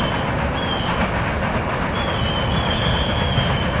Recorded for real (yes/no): yes